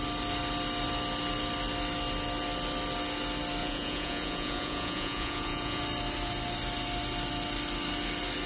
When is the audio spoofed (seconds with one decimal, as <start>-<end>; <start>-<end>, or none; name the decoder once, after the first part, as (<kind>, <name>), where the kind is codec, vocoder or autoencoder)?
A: 3.6-5.8 (vocoder, Vocos)